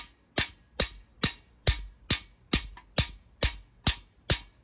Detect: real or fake real